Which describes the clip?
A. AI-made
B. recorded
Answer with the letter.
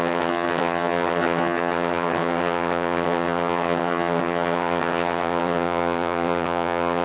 A